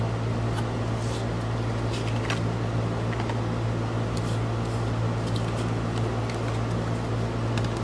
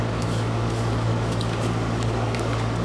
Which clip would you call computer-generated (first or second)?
second